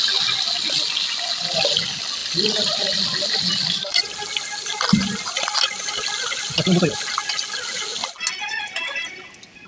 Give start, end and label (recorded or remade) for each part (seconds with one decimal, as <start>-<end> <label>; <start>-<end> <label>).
0.0-9.7 recorded